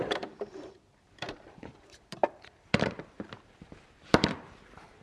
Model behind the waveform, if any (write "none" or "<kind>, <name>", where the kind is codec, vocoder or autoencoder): vocoder, BigVGAN v2